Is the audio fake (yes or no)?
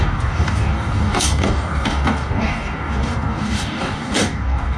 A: yes